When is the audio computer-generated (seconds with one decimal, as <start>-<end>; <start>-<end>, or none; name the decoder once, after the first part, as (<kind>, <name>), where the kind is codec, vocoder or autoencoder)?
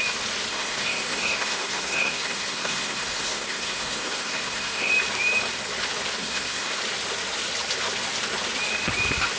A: 0.5-4.9 (codec, SNAC); 6.2-6.8